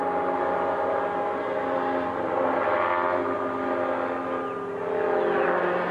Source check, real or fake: real